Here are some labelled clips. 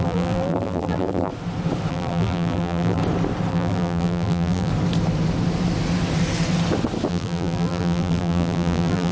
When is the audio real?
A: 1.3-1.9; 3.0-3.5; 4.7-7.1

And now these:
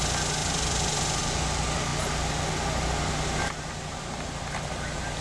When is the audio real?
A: 0.0-0.4; 1.2-5.2

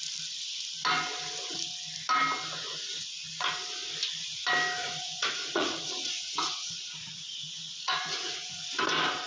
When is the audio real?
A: 0.0-4.8; 8.7-9.3

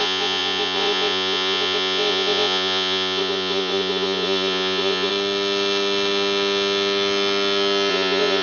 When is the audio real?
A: 5.1-7.9

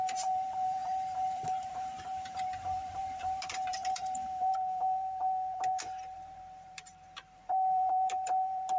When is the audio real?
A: none

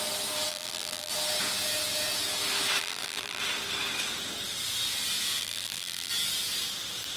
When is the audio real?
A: 0.0-0.5; 1.1-2.8; 3.4-5.4; 6.1-7.2